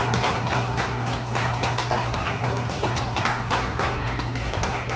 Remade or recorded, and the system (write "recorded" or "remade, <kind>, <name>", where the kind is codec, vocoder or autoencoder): remade, codec, SNAC